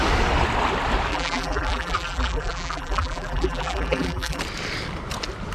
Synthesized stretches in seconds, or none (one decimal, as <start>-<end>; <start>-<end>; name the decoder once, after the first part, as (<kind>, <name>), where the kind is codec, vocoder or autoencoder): 1.1-4.4 (vocoder, BigVGAN v2)